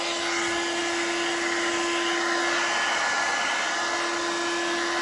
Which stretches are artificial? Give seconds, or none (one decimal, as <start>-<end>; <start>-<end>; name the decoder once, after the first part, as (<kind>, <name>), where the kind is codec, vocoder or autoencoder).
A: none